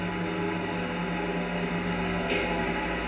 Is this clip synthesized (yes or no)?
no